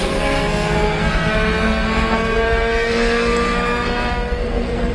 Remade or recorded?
remade